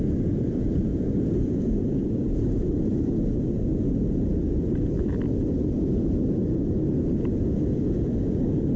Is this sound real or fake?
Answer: real